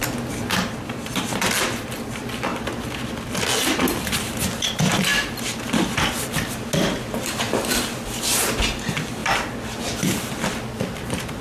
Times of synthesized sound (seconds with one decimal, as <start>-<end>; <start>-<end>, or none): 2.5-3.4; 5.1-6.5; 9.2-11.4

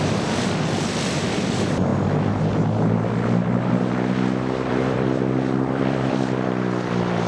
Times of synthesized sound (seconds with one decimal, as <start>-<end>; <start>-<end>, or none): 0.0-1.9; 4.7-7.3

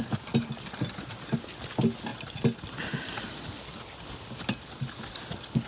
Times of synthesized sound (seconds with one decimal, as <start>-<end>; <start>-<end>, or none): none